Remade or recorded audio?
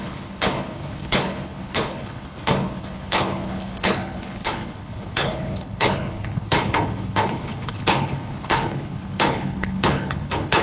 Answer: remade